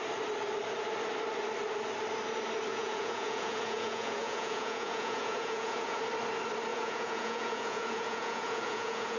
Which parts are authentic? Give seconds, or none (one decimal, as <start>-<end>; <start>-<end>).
0.0-2.7; 6.0-6.7